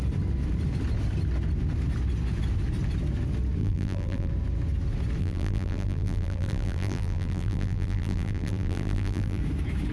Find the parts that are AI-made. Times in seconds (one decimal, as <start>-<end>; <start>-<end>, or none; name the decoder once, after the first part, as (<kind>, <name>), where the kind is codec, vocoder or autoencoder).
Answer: 3.6-4.3 (vocoder, BigVGAN v2); 5.2-9.4